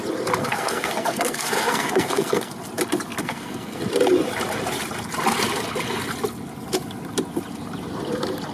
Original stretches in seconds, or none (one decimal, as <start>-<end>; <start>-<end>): 0.0-0.4; 2.5-3.2; 3.8-8.5